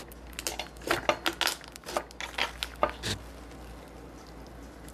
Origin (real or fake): real